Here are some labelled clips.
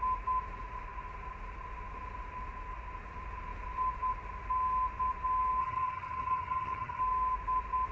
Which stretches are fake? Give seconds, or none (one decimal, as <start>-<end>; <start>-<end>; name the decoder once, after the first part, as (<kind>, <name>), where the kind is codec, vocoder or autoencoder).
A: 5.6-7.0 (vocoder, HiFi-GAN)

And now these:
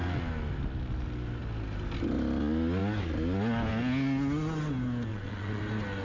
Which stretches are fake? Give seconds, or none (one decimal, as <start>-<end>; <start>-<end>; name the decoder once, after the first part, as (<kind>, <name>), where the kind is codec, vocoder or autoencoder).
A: 5.1-5.6 (vocoder, WaveNeXt)

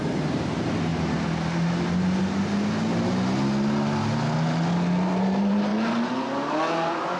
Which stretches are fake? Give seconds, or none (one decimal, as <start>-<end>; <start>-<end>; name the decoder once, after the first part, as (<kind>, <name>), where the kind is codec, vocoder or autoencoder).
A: 0.0-0.9 (vocoder, BigVGAN v2); 5.2-5.7

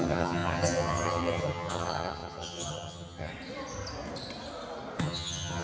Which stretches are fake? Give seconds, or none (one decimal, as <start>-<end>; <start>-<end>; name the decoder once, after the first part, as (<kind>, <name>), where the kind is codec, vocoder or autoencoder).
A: 0.0-3.3 (vocoder, HiFi-GAN); 5.0-5.6

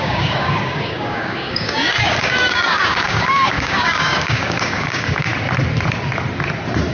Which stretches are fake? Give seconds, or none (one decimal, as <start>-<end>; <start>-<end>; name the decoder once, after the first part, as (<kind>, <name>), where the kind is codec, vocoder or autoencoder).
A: 0.0-5.3 (codec, DAC)

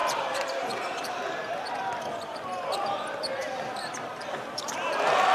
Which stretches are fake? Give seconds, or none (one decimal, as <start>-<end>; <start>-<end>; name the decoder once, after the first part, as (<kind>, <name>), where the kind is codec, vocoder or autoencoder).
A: none